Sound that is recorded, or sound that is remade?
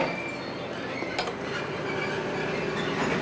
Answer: recorded